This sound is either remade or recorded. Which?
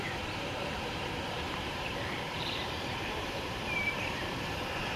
remade